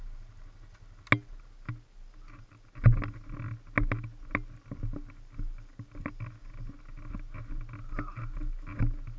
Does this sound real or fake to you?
real